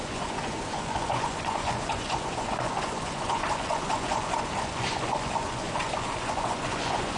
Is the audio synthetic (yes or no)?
yes